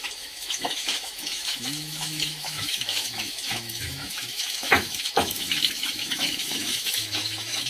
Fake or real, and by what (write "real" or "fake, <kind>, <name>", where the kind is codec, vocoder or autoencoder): fake, autoencoder, DAC-VAE